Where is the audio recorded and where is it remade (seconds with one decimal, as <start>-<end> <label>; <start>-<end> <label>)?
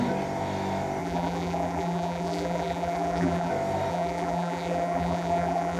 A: 0.0-1.0 recorded; 1.0-3.5 remade; 3.5-3.9 recorded; 3.9-5.8 remade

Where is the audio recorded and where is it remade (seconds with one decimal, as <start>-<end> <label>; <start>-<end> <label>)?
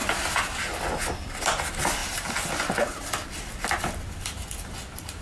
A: 0.0-1.5 remade; 1.5-2.0 recorded; 2.0-5.2 remade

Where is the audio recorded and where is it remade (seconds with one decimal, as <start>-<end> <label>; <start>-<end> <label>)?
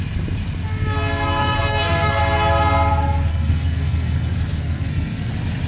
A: 0.0-1.4 recorded; 1.4-2.2 remade; 2.2-3.3 recorded; 3.3-5.3 remade; 5.3-5.7 recorded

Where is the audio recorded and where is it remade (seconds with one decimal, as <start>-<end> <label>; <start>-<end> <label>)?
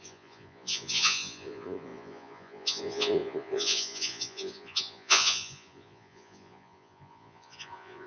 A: 0.0-8.1 remade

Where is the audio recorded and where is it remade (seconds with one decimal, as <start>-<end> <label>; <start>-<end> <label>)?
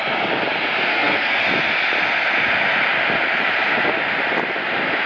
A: 0.0-0.9 recorded; 0.9-1.4 remade; 1.4-5.1 recorded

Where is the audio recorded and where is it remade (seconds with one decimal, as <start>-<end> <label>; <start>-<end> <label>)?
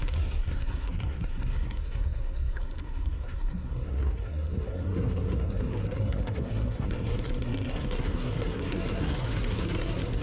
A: 0.0-10.2 remade